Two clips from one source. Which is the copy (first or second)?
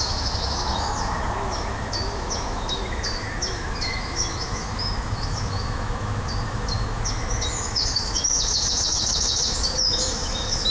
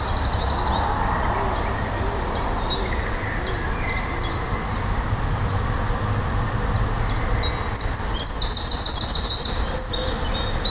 first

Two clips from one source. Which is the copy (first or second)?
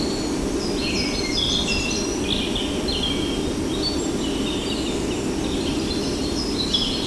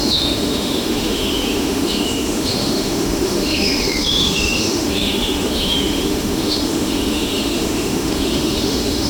second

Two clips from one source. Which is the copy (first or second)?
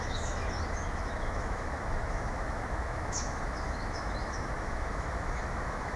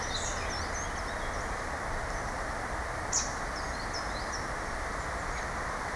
first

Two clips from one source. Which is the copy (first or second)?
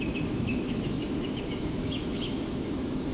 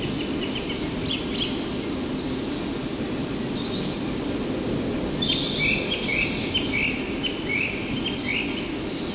first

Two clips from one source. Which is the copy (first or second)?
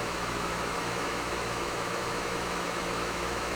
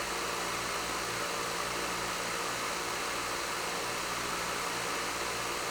first